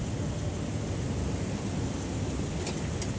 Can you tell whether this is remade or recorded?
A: recorded